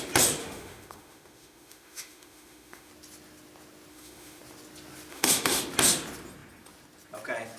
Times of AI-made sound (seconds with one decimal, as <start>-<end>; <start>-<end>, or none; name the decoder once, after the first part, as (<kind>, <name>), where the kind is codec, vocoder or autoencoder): 0.4-2.9 (autoencoder, DAC-VAE); 3.9-4.4; 5.1-5.6

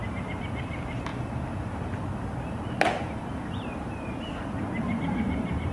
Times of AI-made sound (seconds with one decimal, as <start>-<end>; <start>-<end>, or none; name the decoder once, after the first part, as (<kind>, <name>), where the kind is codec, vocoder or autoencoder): 0.0-5.7 (vocoder, BigVGAN v2)

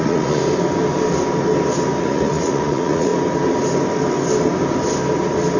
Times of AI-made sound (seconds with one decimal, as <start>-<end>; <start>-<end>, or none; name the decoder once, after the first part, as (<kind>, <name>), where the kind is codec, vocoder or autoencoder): 0.0-0.4 (vocoder, Vocos); 2.0-3.1

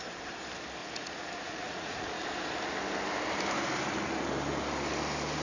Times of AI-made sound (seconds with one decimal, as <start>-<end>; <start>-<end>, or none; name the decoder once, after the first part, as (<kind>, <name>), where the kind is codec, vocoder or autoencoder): 0.8-2.2 (vocoder, Vocos)

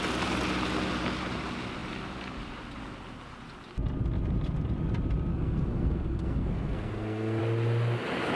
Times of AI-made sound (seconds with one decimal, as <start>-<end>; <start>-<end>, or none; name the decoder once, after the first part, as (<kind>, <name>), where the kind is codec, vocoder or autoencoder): 5.3-7.4 (codec, SNAC)